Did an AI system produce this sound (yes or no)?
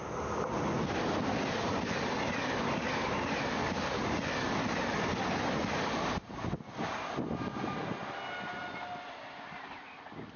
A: no